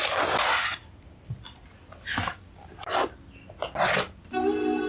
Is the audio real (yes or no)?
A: yes